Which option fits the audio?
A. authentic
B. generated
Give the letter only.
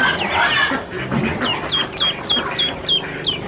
A